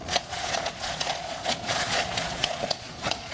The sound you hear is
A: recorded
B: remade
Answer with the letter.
B